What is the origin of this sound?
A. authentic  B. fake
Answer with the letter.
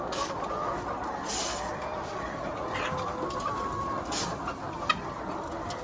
A